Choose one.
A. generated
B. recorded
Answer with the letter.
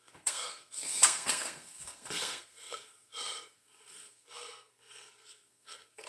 A